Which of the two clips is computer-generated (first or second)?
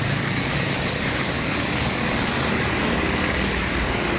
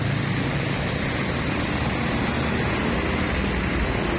first